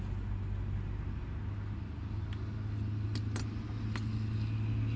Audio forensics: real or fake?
real